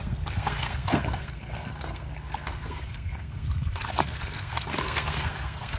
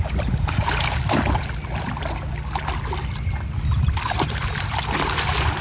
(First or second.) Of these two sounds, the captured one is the second